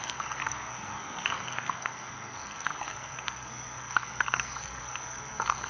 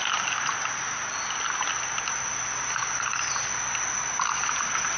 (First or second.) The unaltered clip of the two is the second